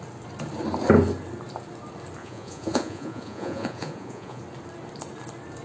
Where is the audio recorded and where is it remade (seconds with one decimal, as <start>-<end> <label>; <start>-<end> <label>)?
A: 0.0-2.2 recorded; 2.2-4.4 remade; 4.4-5.6 recorded